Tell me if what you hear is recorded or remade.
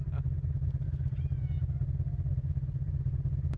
recorded